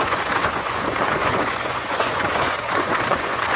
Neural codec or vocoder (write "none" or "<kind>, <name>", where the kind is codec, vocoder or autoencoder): vocoder, Vocos